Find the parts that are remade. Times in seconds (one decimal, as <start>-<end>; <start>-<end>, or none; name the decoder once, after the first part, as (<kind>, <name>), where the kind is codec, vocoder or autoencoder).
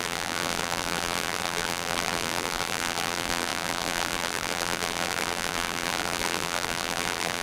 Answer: 0.0-7.4 (vocoder, BigVGAN v2)